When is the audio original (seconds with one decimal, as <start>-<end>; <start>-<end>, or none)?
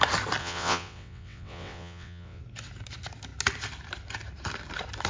0.0-0.4; 2.4-5.1